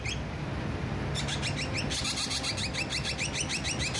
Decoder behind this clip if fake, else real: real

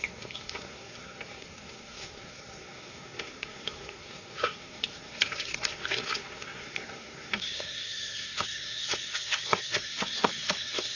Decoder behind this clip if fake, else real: fake, codec, SNAC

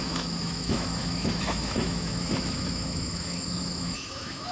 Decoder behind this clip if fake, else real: fake, autoencoder, DAC-VAE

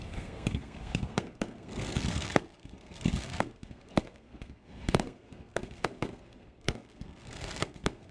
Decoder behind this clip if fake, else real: fake, codec, SNAC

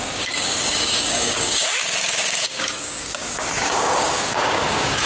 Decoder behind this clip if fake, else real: fake, codec, DAC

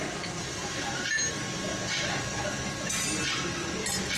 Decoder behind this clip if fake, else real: real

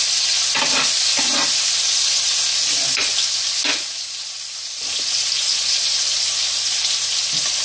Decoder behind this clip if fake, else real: real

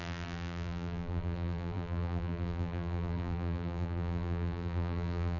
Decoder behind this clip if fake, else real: fake, vocoder, BigVGAN v2